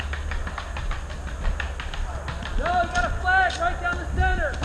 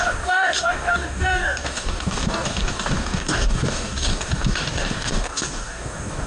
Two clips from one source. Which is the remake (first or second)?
second